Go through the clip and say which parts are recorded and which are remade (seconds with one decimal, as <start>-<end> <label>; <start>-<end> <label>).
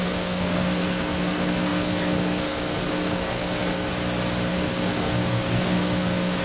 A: 0.0-3.9 remade; 3.9-4.5 recorded; 4.5-6.4 remade